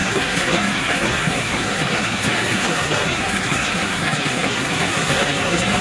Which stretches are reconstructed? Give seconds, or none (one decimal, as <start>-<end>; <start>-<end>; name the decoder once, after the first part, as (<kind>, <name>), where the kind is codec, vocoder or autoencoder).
0.0-5.8 (codec, SNAC)